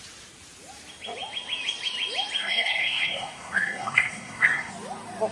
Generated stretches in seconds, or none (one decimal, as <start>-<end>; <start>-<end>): 2.4-4.7